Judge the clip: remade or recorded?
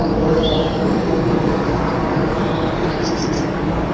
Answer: remade